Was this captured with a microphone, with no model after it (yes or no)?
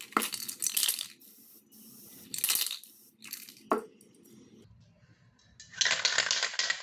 yes